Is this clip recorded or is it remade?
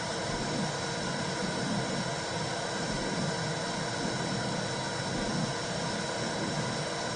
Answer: recorded